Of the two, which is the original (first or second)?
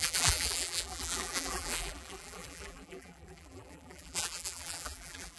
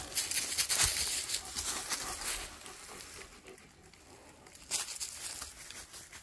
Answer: second